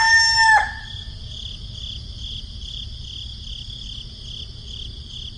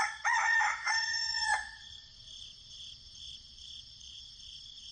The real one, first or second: first